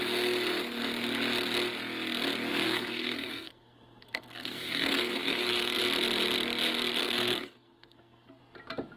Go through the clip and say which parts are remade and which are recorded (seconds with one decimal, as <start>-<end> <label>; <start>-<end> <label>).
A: 0.0-2.5 recorded; 2.5-5.8 remade; 5.8-7.0 recorded; 7.0-8.4 remade; 8.4-9.0 recorded